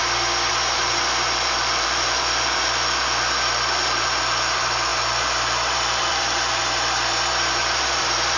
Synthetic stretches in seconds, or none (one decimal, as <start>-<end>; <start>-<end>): 0.5-8.4